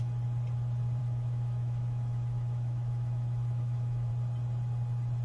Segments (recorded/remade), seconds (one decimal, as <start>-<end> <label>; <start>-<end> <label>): 0.0-1.0 recorded; 1.0-4.1 remade; 4.1-5.2 recorded